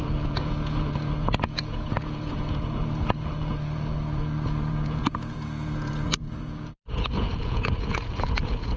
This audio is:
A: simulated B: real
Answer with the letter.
A